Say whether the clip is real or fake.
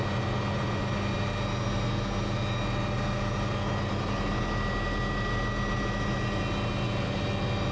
real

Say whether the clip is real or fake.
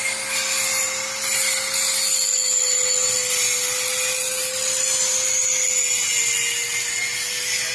real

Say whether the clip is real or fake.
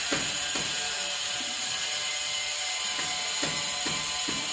real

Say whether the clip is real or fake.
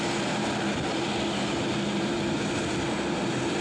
real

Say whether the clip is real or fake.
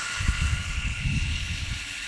fake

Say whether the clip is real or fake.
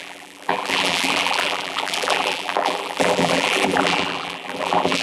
fake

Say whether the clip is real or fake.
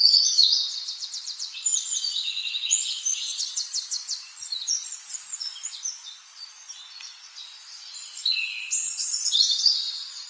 fake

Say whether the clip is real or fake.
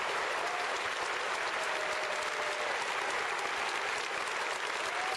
real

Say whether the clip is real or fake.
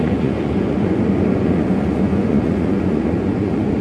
fake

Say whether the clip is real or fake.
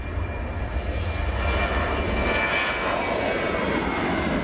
real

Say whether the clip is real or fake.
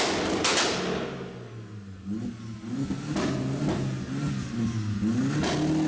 real